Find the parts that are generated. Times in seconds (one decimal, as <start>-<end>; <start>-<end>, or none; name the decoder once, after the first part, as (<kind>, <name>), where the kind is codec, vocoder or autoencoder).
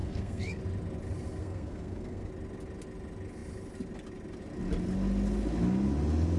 0.0-0.6 (codec, SNAC); 1.4-2.3